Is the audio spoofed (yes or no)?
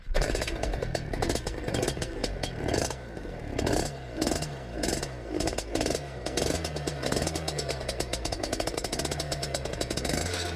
yes